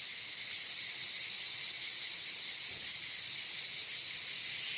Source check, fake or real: real